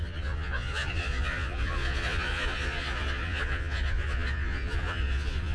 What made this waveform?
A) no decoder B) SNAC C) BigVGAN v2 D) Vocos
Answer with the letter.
D